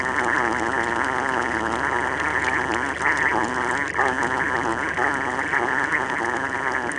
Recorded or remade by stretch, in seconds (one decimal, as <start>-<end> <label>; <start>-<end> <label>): 0.0-7.0 recorded